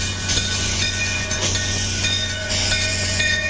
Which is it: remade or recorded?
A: remade